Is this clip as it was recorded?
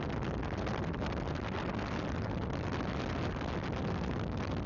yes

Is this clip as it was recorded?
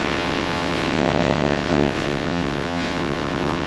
no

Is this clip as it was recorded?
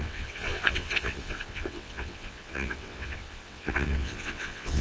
no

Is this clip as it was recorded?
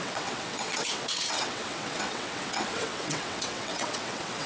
no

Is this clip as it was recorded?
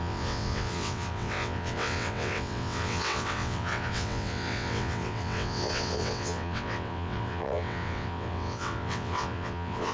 no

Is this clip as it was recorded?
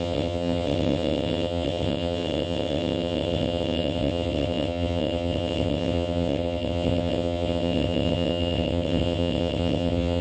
no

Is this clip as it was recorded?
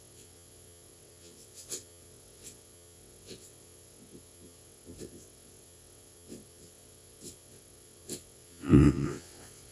no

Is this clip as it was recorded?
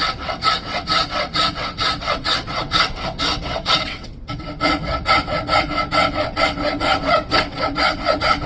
no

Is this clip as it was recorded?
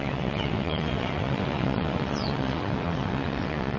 no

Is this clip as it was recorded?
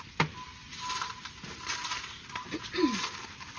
yes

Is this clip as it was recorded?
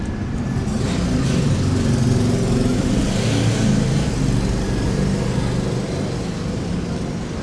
yes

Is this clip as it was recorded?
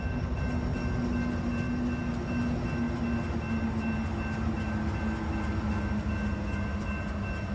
yes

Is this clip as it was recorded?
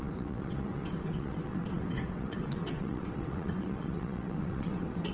no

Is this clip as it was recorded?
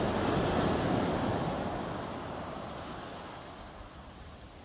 yes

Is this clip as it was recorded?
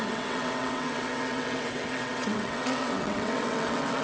no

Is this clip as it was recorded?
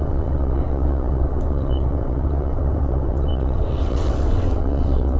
no